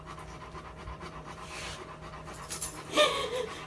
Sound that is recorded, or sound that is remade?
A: remade